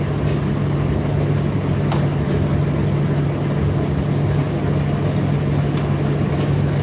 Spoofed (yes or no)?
no